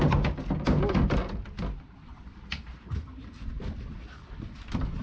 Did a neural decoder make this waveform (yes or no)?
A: no